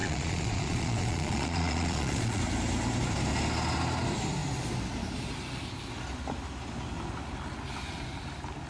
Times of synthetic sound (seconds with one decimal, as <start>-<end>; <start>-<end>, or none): 0.0-2.4